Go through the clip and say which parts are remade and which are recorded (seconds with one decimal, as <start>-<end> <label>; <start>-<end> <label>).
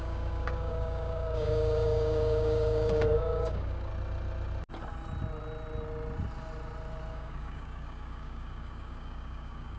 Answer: 0.0-3.9 remade; 3.9-7.1 recorded; 7.1-9.8 remade